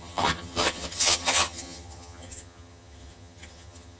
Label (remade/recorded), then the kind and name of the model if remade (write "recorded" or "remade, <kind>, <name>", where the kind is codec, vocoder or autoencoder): remade, vocoder, HiFi-GAN